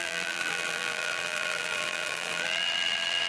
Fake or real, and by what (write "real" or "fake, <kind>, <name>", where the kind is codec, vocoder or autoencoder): fake, vocoder, BigVGAN v2